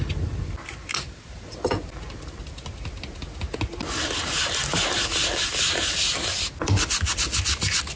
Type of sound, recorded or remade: recorded